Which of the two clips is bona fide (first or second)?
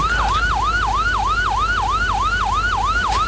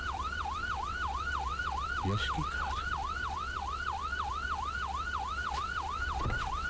first